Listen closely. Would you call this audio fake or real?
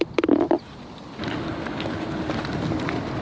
real